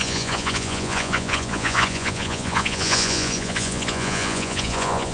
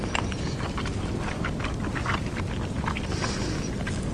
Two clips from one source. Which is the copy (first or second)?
first